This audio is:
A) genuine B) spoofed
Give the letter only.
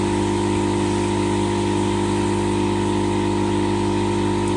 A